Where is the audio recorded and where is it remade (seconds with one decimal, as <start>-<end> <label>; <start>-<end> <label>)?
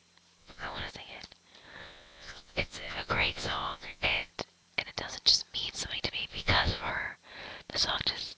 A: 0.0-0.4 recorded; 0.4-0.9 remade; 0.9-1.8 recorded; 1.8-4.3 remade; 4.3-6.3 recorded; 6.3-6.9 remade; 6.9-8.4 recorded